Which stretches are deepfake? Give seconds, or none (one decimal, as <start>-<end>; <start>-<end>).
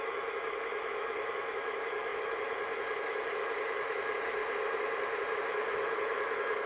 0.0-4.4; 5.4-6.7